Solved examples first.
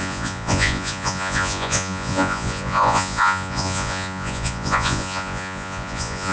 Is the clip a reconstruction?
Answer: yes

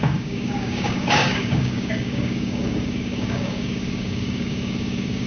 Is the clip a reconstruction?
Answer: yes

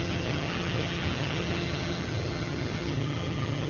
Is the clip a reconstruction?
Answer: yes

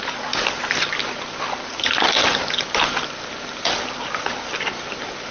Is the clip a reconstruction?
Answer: no